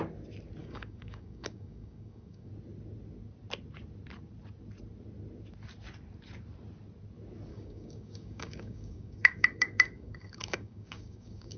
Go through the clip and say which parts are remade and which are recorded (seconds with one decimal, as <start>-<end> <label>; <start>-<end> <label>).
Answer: 0.0-0.6 recorded; 0.6-2.5 remade; 2.5-7.5 recorded; 7.5-11.6 remade